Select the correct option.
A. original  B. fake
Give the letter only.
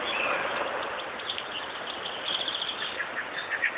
A